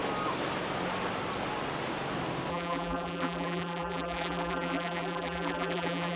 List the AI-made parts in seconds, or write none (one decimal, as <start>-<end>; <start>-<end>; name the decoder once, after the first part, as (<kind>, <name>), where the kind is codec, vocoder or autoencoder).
2.5-6.2 (vocoder, BigVGAN v2)